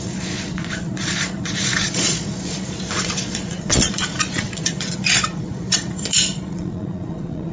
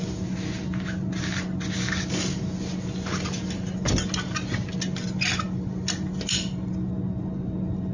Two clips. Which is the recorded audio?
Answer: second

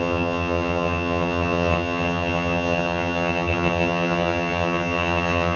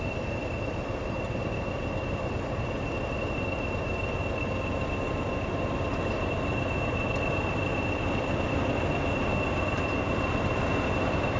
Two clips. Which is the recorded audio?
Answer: second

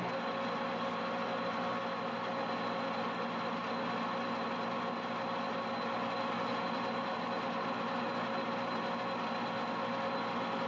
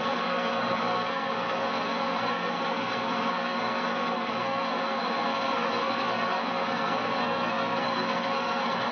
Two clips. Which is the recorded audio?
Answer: first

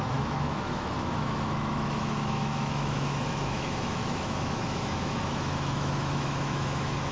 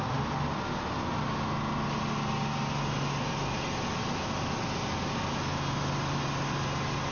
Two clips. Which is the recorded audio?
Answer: second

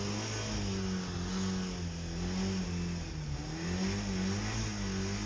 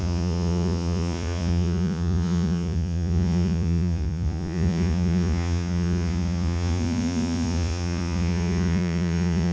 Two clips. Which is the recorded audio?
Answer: first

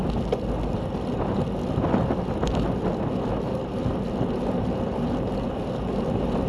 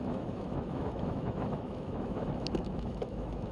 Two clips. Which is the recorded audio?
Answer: first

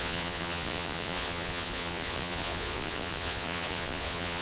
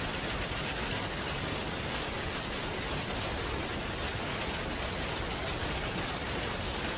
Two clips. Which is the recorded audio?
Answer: second